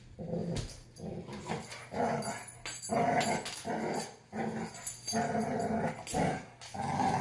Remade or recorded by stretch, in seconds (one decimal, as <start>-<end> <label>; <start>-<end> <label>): 0.0-7.2 recorded